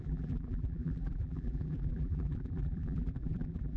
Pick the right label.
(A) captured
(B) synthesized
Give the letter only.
B